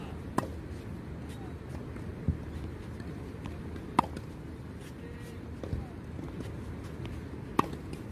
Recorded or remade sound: recorded